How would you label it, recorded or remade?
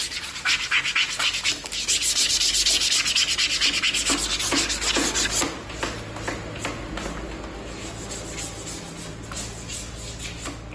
recorded